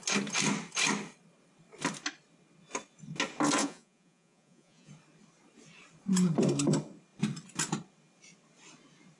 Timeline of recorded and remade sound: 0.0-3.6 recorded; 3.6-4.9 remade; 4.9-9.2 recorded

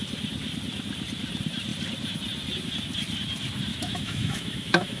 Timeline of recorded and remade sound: 0.0-3.7 recorded; 3.7-5.0 remade

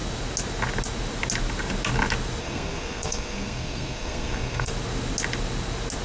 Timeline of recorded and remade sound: 0.0-2.4 recorded; 2.4-4.7 remade; 4.7-6.0 recorded

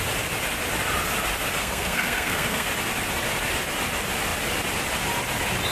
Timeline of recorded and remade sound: 0.0-1.6 recorded; 1.6-2.7 remade; 2.7-5.7 recorded

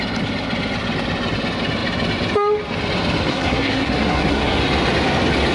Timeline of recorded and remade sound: 0.0-3.3 recorded; 3.3-4.6 remade; 4.6-5.5 recorded